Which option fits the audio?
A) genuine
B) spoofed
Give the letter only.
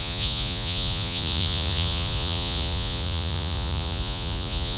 B